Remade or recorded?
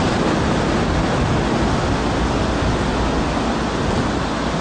recorded